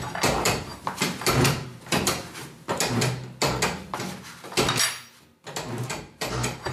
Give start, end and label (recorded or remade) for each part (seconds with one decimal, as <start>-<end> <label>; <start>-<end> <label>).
0.0-2.4 remade; 2.4-5.8 recorded; 5.8-6.7 remade